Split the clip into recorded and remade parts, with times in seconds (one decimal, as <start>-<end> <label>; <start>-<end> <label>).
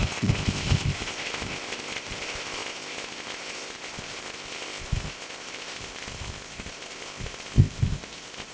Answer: 0.0-8.5 remade